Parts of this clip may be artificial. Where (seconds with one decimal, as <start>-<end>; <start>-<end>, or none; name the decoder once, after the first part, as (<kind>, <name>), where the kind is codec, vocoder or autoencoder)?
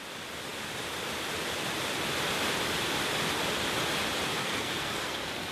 4.4-5.5 (codec, SNAC)